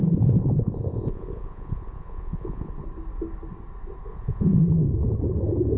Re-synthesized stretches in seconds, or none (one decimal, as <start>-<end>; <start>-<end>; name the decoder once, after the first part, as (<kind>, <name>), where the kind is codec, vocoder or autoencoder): 0.0-2.7 (vocoder, Vocos); 4.1-4.6